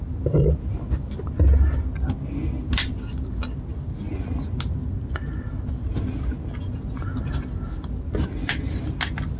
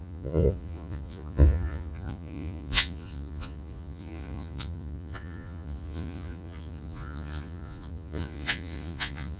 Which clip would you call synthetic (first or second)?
second